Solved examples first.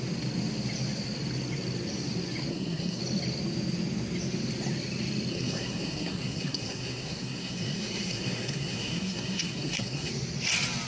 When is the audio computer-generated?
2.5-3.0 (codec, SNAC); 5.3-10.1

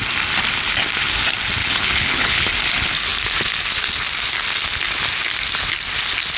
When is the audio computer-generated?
1.6-2.5 (codec, HILCodec)